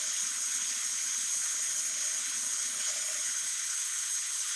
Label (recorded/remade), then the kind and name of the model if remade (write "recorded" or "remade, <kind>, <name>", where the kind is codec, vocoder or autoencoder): remade, codec, HILCodec